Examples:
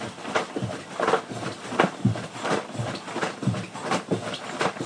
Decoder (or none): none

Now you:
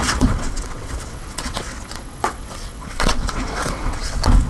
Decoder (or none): vocoder, WaveNeXt